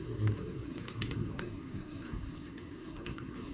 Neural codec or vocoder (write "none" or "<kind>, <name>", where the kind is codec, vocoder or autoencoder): codec, SNAC